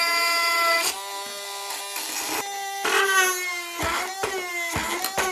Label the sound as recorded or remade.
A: recorded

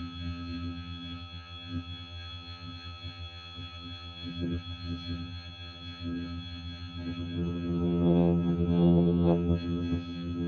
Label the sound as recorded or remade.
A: remade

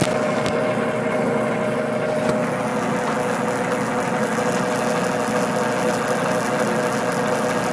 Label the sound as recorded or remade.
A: recorded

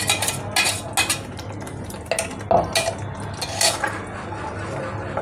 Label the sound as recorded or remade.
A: recorded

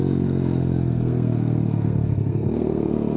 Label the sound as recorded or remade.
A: remade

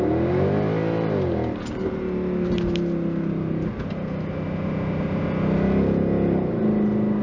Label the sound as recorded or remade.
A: recorded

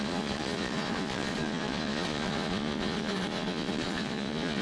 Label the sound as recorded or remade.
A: remade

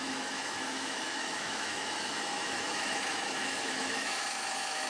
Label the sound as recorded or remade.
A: remade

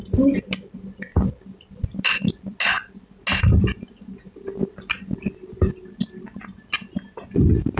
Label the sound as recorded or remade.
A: recorded